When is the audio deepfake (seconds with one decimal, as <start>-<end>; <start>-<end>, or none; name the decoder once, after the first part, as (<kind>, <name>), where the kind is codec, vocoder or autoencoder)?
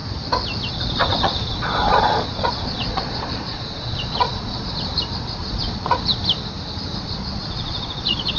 0.7-4.9 (vocoder, Vocos); 5.4-6.2; 7.0-8.4